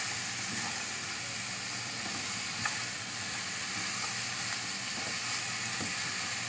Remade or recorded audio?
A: recorded